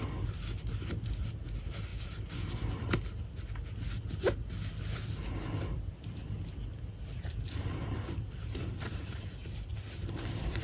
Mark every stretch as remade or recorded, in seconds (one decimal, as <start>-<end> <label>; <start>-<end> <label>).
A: 0.0-9.4 recorded; 9.4-10.6 remade